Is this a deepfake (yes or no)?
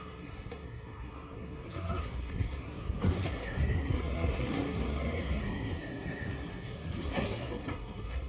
yes